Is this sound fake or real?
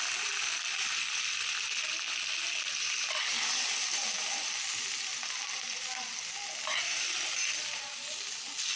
real